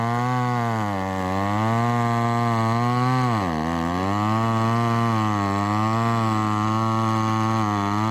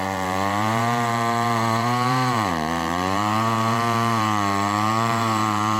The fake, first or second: second